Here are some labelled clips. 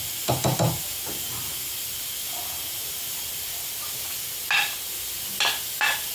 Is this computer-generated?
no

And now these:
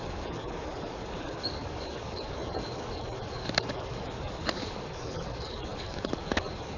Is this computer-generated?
yes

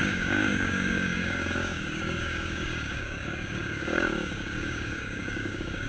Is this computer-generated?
yes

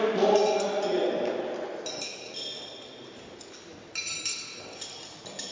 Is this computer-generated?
no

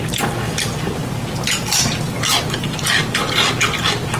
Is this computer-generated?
no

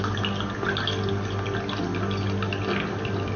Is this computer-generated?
no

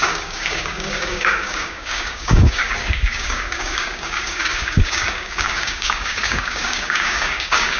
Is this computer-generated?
yes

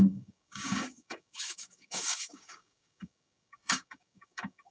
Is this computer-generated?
yes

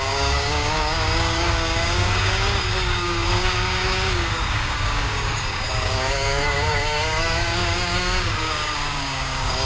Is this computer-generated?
yes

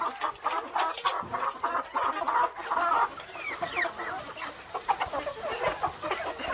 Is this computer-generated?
no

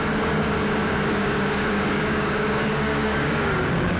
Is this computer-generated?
yes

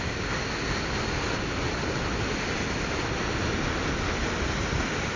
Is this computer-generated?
no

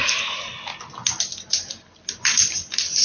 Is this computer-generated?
no